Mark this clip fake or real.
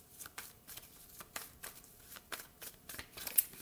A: fake